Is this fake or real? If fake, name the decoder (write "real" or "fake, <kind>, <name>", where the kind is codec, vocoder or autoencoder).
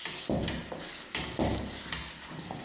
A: real